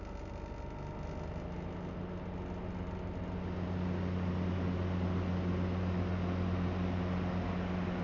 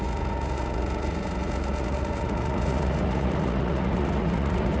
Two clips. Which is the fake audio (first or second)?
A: second